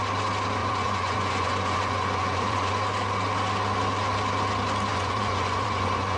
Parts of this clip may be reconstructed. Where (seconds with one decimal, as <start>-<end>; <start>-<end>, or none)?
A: 0.6-2.7; 4.9-6.2